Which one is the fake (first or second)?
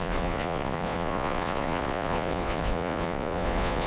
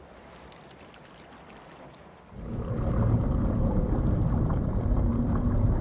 first